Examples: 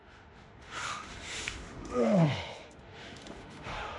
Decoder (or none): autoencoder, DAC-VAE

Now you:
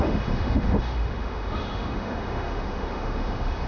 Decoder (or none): autoencoder, DAC-VAE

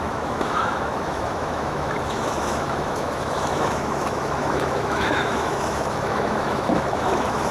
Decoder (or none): autoencoder, DAC-VAE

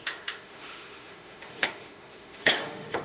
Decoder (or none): autoencoder, DAC-VAE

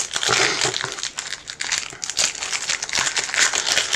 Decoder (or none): none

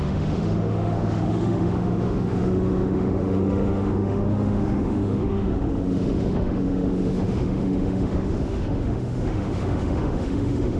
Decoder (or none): autoencoder, DAC-VAE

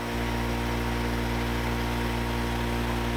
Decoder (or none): none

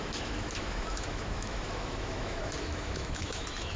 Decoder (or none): autoencoder, DAC-VAE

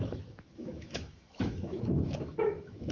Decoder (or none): autoencoder, DAC-VAE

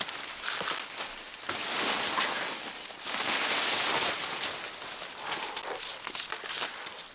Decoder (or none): none